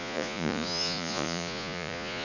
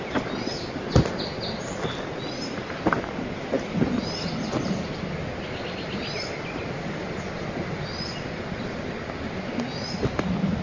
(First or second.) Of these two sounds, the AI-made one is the first